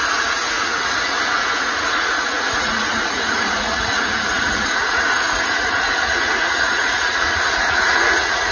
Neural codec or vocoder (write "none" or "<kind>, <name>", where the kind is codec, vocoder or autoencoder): vocoder, Vocos